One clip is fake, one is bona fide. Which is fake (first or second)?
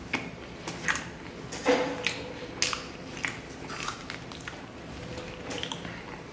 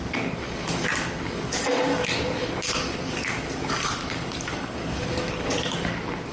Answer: second